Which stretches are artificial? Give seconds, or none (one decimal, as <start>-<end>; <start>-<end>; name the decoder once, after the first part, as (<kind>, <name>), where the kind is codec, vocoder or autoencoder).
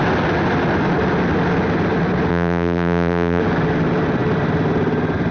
2.3-3.4 (vocoder, BigVGAN v2)